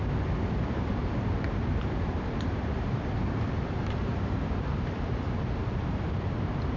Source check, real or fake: fake